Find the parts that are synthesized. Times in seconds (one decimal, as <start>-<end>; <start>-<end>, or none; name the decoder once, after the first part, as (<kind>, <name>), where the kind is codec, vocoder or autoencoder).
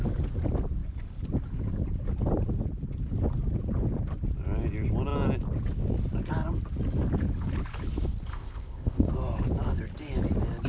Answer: 8.3-9.1 (codec, ZipCodec)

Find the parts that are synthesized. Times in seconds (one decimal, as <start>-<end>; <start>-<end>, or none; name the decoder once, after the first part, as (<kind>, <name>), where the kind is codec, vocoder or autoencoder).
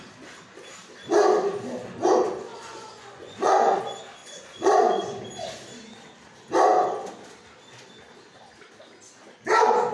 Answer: 2.5-3.8 (vocoder, Vocos); 4.2-5.2